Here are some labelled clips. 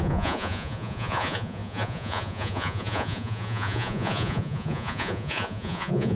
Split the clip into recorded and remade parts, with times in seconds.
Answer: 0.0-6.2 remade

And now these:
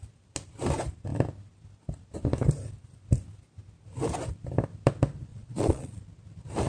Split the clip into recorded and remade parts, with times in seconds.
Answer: 0.0-5.3 recorded; 5.3-6.0 remade; 6.0-6.7 recorded